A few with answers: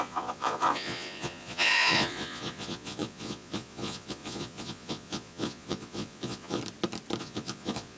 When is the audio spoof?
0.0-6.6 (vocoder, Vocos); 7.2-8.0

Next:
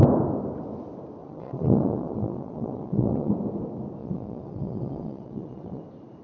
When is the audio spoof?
1.2-3.3 (vocoder, WaveNeXt); 4.0-5.8

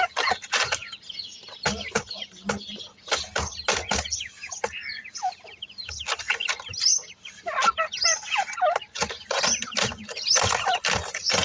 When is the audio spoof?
none

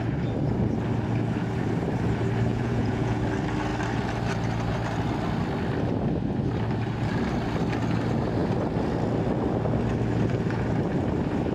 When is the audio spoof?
2.5-3.2 (vocoder, Vocos)

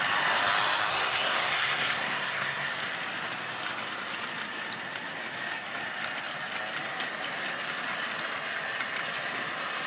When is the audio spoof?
0.9-2.7 (codec, SNAC)

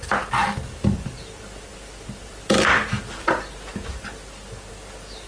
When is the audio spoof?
none

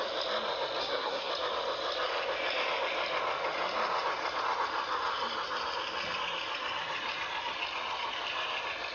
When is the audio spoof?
0.8-1.3 (codec, SNAC)

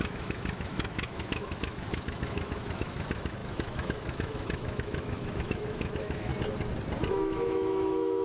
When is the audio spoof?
0.0-6.3 (autoencoder, DAC-VAE); 7.1-8.2